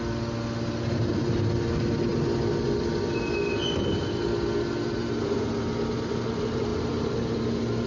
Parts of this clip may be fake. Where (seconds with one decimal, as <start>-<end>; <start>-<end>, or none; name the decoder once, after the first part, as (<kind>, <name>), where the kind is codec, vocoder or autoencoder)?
6.7-7.4 (vocoder, BigVGAN v2)